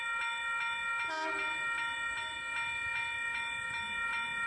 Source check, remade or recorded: recorded